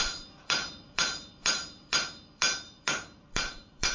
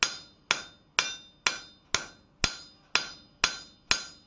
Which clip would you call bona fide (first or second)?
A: second